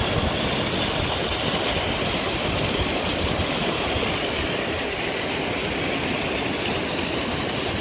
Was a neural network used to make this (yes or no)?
no